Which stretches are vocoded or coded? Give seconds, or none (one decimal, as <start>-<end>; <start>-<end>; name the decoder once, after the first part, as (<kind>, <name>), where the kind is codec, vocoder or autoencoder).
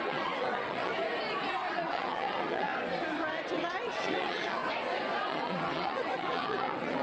0.0-0.9 (vocoder, WaveNeXt); 1.7-2.7; 3.3-4.6; 5.2-7.0